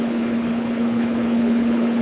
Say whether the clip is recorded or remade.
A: remade